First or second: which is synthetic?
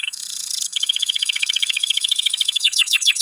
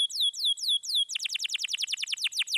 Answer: first